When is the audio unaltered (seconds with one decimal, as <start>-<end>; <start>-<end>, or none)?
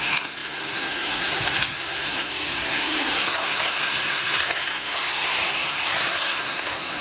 none